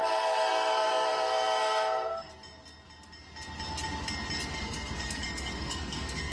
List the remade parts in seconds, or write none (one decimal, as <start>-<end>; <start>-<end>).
0.0-2.3; 4.6-6.3